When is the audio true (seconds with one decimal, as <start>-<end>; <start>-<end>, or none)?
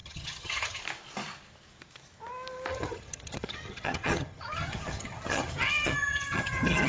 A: 0.8-2.7